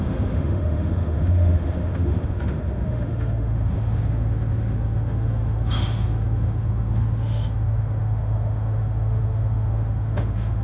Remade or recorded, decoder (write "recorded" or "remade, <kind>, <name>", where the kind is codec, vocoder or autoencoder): remade, autoencoder, DAC-VAE